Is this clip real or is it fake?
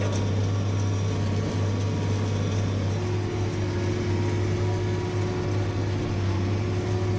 real